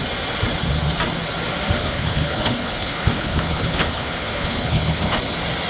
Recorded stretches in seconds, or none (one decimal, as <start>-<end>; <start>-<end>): 0.0-1.8; 5.2-5.7